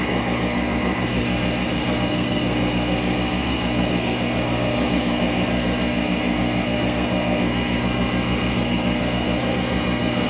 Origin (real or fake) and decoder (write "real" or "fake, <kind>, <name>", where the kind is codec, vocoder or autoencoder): fake, codec, SNAC